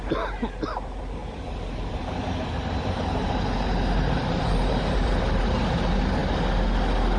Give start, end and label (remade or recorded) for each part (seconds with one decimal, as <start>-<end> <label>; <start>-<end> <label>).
0.0-1.2 recorded; 1.2-5.5 remade; 5.5-7.2 recorded